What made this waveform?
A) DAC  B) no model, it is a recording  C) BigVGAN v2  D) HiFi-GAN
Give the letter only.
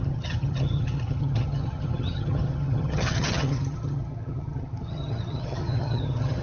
D